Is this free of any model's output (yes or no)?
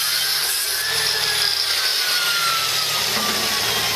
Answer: no